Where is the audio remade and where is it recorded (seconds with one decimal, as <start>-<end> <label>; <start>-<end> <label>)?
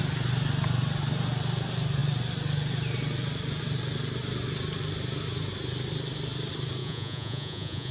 0.0-6.8 recorded; 6.8-7.9 remade